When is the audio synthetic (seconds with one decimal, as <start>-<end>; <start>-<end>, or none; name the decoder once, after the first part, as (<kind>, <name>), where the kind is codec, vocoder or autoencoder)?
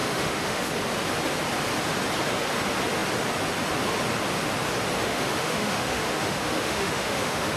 0.0-0.7 (autoencoder, DAC-VAE); 5.0-7.6